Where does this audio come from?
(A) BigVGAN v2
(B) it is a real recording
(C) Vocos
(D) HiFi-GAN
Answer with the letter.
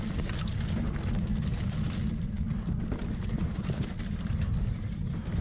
B